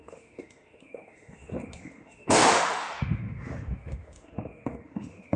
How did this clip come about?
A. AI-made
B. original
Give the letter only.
A